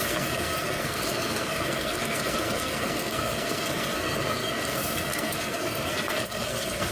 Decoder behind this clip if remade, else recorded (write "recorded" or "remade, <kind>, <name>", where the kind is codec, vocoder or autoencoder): remade, codec, SNAC